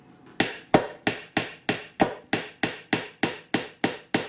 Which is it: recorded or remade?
recorded